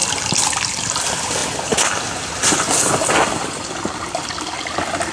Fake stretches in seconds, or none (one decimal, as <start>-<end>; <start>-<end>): 0.9-1.4; 4.2-5.1